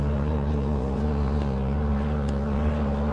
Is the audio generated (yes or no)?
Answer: yes